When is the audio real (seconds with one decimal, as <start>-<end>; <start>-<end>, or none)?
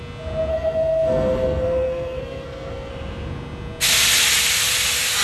0.0-0.5; 2.9-5.2